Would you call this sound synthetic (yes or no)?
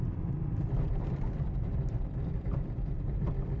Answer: yes